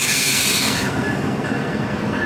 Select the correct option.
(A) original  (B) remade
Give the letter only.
B